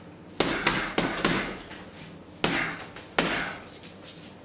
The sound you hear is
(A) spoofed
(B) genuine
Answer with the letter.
B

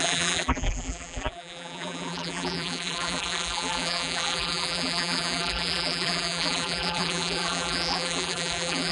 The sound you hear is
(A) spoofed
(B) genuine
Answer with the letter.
A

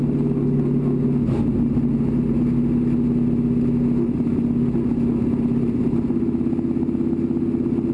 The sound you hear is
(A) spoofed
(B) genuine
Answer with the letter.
B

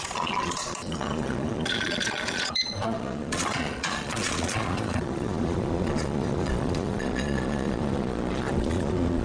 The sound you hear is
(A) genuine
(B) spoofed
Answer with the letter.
B